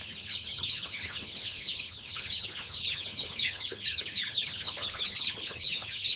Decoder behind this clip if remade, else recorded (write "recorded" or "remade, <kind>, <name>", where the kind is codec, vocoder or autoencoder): remade, codec, HILCodec